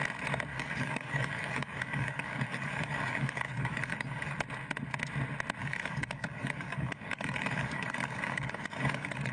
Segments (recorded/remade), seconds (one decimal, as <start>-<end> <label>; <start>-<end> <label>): 0.0-0.5 recorded; 0.5-4.4 remade; 4.4-5.6 recorded; 5.6-9.3 remade